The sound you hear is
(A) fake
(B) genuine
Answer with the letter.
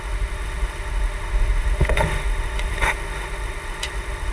A